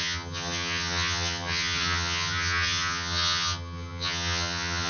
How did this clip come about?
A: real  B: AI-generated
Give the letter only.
B